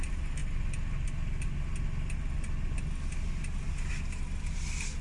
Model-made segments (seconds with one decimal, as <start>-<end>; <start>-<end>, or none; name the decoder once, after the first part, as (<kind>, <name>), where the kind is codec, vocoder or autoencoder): none